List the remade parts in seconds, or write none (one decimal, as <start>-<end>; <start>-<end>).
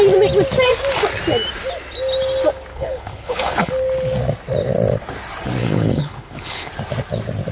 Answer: 2.7-3.7; 5.6-6.7